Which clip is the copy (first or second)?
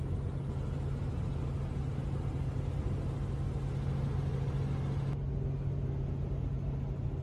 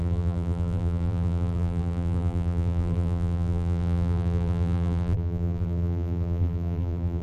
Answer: second